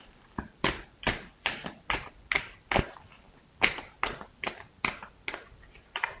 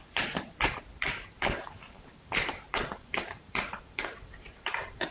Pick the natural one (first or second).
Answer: first